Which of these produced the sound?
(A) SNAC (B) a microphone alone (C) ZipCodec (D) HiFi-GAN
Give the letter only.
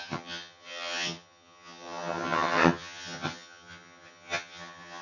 D